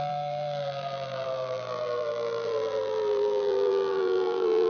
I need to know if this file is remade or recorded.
remade